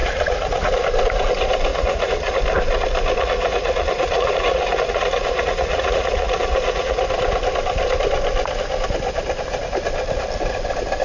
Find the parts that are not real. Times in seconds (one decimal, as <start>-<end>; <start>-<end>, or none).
0.0-0.7; 1.7-2.4; 3.2-7.0